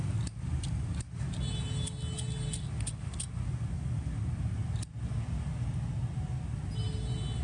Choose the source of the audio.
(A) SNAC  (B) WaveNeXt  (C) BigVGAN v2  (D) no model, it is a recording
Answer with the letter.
D